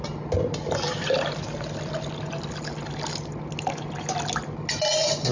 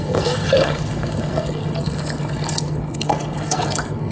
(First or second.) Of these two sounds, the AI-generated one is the second